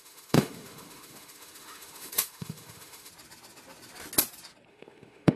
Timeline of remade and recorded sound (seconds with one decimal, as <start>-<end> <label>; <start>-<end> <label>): 0.0-3.1 remade; 3.1-4.7 recorded; 4.7-5.4 remade

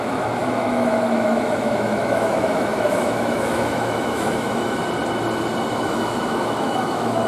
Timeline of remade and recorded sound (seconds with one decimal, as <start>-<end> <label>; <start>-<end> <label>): 0.0-4.8 remade; 4.8-5.7 recorded; 5.7-7.3 remade